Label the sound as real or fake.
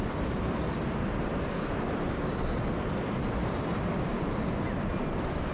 real